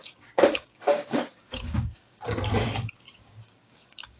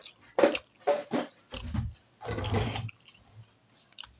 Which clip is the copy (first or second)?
first